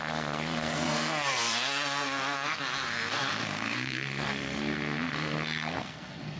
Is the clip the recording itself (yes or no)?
no